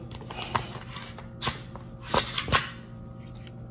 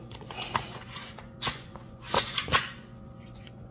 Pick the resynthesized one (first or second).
second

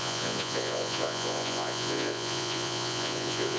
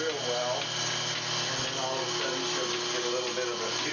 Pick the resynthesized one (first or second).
first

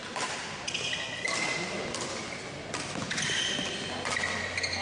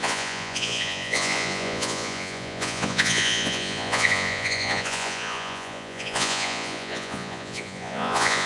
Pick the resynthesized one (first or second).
second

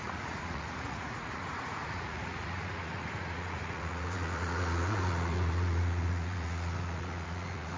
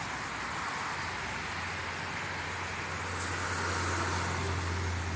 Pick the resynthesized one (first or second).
first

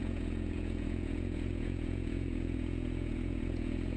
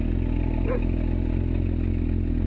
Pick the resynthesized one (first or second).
first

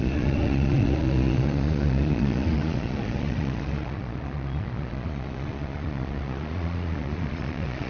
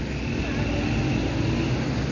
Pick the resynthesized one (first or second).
first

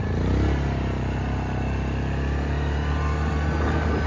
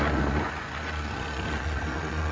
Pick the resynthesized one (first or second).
second